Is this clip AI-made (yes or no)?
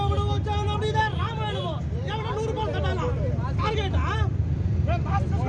no